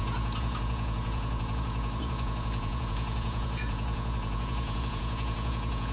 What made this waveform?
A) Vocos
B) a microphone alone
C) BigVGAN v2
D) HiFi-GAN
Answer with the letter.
A